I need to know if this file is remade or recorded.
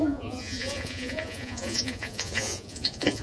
remade